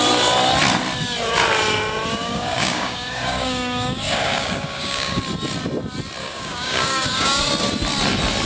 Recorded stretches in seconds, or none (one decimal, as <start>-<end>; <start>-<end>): 0.0-2.2; 5.2-6.2; 7.4-8.4